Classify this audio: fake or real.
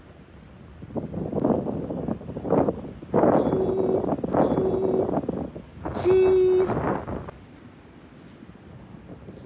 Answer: real